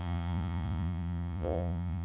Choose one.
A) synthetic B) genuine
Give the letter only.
A